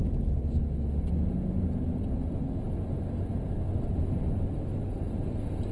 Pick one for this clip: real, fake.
real